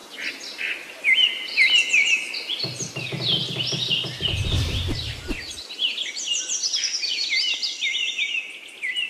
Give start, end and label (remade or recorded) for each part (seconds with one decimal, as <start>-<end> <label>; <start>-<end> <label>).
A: 0.0-9.1 recorded

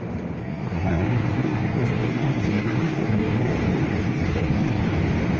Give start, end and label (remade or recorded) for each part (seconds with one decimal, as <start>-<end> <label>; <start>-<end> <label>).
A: 0.0-0.4 recorded; 0.4-3.5 remade; 3.5-3.9 recorded; 3.9-4.8 remade; 4.8-5.4 recorded

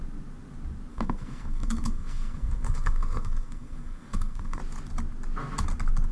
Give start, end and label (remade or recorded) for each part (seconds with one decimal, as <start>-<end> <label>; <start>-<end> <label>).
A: 0.0-0.9 recorded; 0.9-4.6 remade; 4.6-6.1 recorded

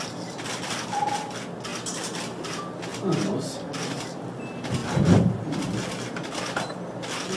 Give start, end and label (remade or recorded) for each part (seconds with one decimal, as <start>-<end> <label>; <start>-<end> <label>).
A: 0.0-7.4 recorded

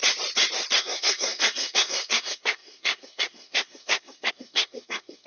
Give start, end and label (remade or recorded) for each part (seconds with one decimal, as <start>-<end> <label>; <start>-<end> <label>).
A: 0.0-0.8 recorded; 0.8-5.3 remade

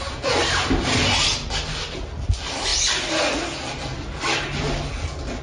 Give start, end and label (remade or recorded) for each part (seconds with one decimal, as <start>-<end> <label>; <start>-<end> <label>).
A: 0.0-5.4 recorded